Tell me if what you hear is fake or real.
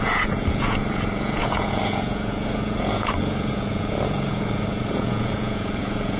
fake